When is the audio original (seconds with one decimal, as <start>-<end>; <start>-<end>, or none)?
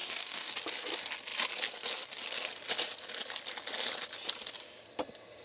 0.5-5.4